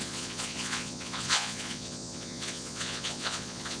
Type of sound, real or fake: fake